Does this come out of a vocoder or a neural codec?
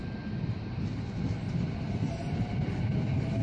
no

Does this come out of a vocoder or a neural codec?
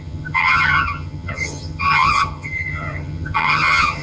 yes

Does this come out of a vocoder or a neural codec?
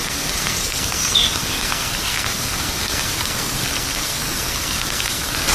yes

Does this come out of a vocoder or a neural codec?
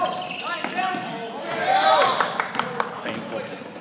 no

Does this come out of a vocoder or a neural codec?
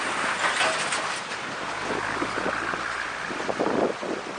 no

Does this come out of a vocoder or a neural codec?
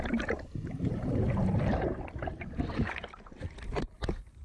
yes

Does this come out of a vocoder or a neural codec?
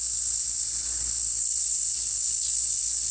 no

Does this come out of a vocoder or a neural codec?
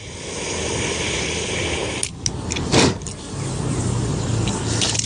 no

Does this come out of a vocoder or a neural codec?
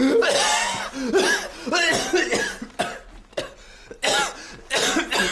no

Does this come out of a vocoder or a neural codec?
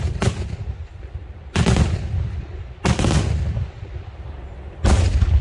no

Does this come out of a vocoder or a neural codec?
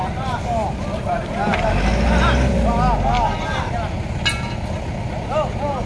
no